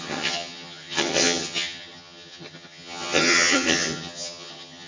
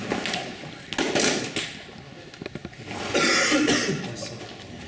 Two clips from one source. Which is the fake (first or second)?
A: first